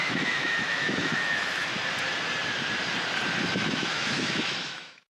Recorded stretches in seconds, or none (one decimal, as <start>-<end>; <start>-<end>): 1.7-3.5